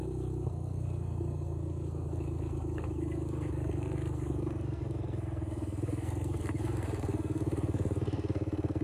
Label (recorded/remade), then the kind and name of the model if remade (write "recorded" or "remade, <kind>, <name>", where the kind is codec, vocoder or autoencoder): remade, codec, SNAC